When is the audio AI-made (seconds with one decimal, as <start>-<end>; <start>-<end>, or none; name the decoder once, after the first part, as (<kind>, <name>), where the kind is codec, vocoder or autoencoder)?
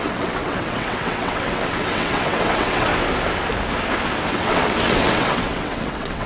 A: 0.0-2.9 (vocoder, WaveNeXt); 4.3-6.3